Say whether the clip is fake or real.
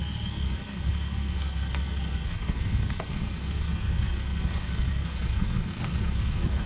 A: fake